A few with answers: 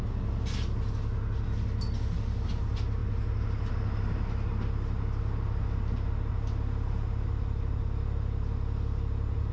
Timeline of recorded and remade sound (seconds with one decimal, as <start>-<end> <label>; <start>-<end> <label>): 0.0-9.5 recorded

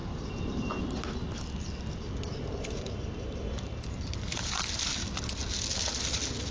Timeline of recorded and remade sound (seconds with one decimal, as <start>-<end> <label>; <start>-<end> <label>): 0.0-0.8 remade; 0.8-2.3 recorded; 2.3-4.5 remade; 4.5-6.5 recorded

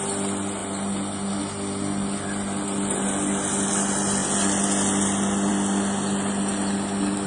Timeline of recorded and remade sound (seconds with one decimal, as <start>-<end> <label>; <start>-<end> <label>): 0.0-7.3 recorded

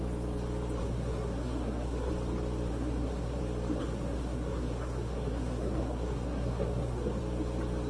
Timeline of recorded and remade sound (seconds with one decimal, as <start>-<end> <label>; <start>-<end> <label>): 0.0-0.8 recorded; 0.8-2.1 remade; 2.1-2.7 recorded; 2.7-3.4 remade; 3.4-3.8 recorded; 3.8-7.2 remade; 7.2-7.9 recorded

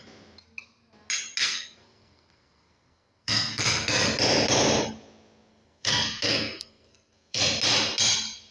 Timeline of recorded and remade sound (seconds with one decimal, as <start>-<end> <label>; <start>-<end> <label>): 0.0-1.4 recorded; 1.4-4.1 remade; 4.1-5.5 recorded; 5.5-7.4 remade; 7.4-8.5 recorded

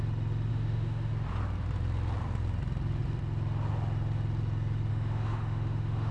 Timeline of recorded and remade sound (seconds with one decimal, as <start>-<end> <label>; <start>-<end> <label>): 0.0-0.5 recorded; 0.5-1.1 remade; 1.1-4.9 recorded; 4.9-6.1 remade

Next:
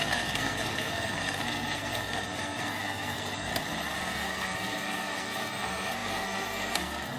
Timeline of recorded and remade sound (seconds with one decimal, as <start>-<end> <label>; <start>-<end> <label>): 0.0-3.5 remade; 3.5-4.0 recorded; 4.0-7.2 remade